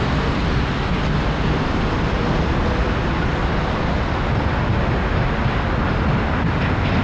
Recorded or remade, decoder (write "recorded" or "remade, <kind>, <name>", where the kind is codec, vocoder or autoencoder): recorded